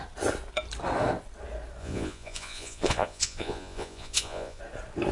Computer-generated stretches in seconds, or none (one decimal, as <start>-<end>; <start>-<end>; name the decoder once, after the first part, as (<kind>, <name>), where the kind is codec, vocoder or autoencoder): 1.8-4.6 (vocoder, Vocos)